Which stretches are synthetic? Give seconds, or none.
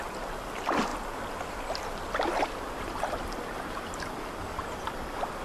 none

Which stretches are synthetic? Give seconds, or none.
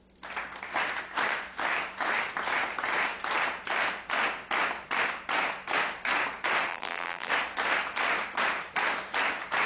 6.7-7.3 (vocoder, BigVGAN v2)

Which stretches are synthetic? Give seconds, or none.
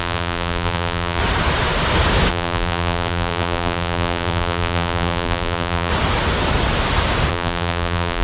0.0-1.2 (vocoder, BigVGAN v2); 2.3-5.9; 7.3-8.2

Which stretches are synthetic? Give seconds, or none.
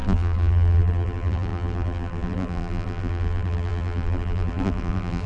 0.0-5.3 (vocoder, BigVGAN v2)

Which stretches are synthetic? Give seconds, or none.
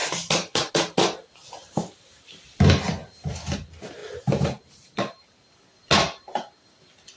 0.0-0.7 (vocoder, BigVGAN v2); 1.6-2.4; 4.0-5.5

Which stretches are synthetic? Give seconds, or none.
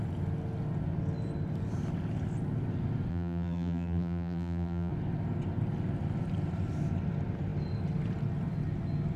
3.1-4.9 (vocoder, BigVGAN v2)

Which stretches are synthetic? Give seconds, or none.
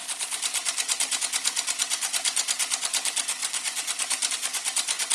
0.0-1.2 (vocoder, BigVGAN v2); 3.4-4.3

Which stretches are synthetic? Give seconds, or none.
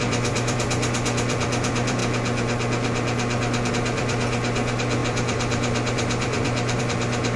0.0-2.0 (vocoder, BigVGAN v2); 3.7-7.4